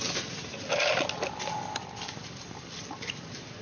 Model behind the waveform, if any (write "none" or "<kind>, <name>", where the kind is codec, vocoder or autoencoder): none